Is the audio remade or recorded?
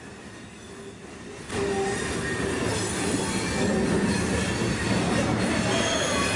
recorded